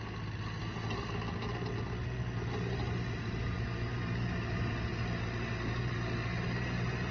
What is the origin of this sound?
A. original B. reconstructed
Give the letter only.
A